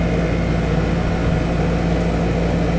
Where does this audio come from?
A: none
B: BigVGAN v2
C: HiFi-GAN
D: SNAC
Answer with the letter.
A